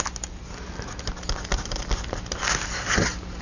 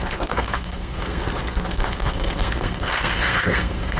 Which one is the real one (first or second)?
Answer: first